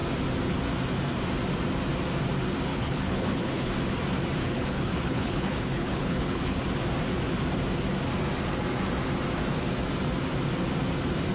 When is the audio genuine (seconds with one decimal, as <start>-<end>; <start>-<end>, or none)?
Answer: 0.0-2.7; 3.7-4.4; 6.6-11.3